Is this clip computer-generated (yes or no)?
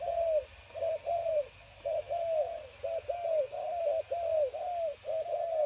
no